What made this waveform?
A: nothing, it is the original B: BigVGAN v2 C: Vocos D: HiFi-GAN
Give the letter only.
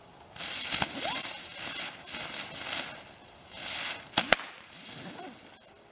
A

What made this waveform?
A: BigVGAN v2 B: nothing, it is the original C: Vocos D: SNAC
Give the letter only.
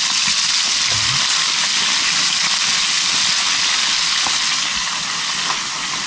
B